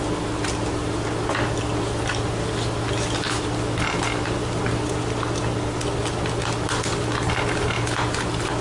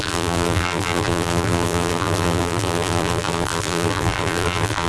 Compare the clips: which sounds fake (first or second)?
second